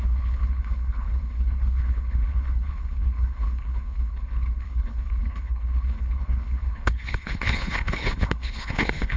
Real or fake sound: fake